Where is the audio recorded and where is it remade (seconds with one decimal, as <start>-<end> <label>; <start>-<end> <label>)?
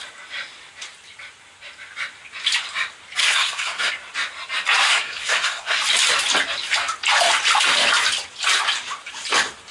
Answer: 0.0-3.2 recorded; 3.2-3.9 remade; 3.9-4.9 recorded; 4.9-5.8 remade; 5.8-9.7 recorded